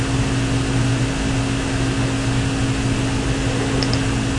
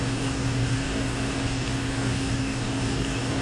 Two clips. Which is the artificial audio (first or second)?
second